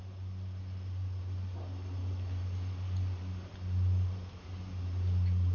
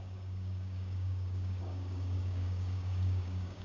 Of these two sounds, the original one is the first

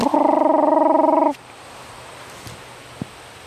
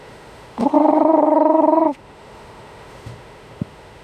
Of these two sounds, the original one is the first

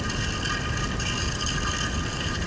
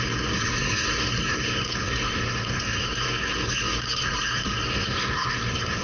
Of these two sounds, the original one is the first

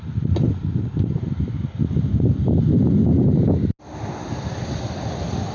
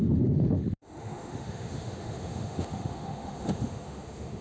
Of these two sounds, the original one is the first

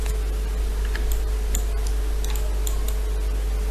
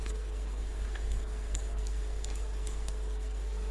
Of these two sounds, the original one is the first